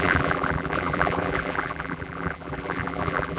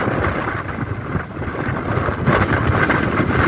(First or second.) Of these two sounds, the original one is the second